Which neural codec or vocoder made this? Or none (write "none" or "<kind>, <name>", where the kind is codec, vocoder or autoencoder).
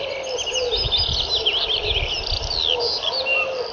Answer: none